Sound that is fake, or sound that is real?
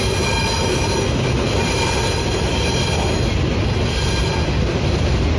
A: real